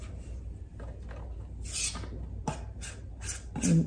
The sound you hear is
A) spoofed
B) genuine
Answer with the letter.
B